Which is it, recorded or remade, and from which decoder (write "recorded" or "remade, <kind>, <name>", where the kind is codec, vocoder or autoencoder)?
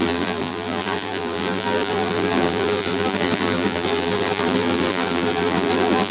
remade, vocoder, BigVGAN v2